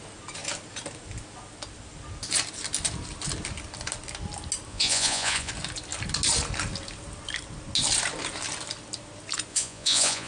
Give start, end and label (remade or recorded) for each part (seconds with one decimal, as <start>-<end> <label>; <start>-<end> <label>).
0.0-4.7 recorded; 4.7-5.5 remade; 5.5-9.5 recorded; 9.5-10.3 remade